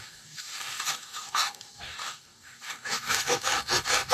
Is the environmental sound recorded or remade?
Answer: remade